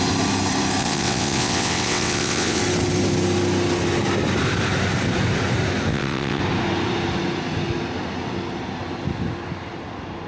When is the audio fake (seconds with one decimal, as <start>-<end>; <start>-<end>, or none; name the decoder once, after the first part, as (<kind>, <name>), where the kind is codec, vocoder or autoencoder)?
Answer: 0.8-2.6 (vocoder, WaveNeXt); 5.9-6.4